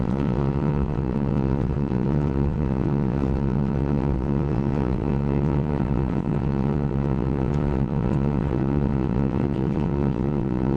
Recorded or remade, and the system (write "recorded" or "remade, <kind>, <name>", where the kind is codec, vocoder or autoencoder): remade, vocoder, WaveNeXt